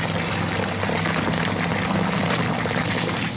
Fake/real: real